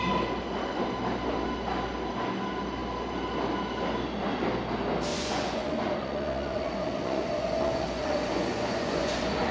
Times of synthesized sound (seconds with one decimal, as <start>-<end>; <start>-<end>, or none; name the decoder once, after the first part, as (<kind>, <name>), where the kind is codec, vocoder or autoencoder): 5.1-9.5 (vocoder, Vocos)